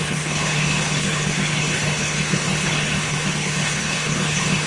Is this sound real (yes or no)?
no